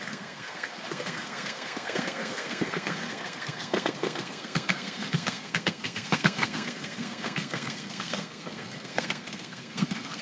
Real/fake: fake